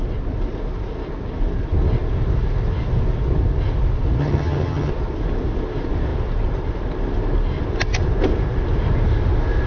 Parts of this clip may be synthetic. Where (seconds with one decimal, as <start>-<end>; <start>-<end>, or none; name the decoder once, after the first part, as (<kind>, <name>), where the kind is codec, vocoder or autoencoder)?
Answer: 4.2-4.9 (vocoder, HiFi-GAN)